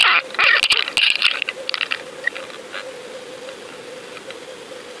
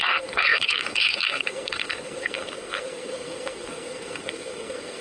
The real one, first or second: first